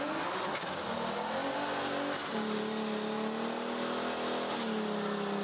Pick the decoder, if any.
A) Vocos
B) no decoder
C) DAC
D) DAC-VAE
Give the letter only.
B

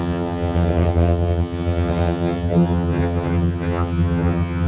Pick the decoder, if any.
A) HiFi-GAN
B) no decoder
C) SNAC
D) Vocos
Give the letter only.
A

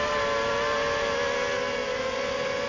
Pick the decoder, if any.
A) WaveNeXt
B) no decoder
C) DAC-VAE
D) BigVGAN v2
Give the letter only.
B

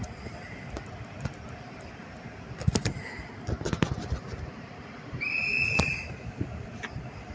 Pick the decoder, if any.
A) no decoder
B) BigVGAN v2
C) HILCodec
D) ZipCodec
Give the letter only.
A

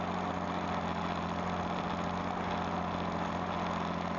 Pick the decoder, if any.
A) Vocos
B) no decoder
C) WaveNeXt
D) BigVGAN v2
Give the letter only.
B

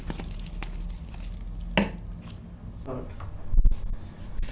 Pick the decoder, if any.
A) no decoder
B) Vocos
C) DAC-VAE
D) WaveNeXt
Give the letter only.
A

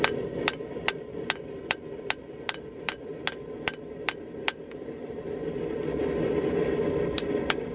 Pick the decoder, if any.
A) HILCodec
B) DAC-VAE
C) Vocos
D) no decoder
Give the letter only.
D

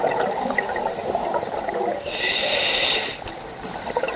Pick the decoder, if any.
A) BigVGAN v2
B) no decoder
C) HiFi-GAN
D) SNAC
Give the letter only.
B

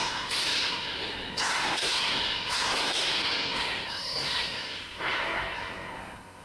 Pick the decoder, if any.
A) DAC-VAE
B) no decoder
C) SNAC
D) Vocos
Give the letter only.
C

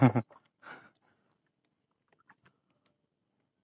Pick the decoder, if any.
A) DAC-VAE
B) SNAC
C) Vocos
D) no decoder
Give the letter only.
D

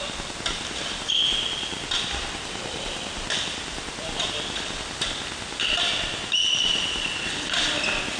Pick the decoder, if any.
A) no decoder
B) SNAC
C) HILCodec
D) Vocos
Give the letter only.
A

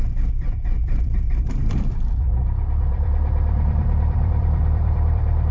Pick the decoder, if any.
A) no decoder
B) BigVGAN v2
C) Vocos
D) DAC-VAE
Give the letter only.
B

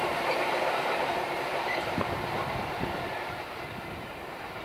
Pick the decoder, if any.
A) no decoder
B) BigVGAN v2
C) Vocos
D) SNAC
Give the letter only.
B